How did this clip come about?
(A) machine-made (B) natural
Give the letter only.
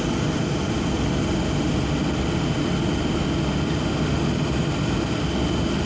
B